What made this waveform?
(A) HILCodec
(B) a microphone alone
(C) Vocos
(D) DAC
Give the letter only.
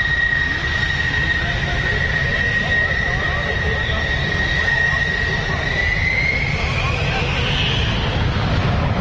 B